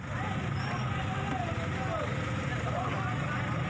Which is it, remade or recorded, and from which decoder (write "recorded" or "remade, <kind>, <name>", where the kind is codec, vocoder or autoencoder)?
recorded